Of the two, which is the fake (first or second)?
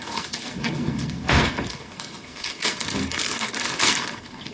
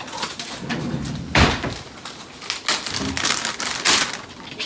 first